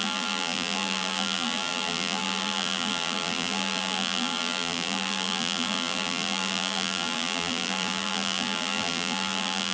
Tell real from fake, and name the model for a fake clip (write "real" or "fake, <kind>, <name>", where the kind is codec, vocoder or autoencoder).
fake, vocoder, BigVGAN v2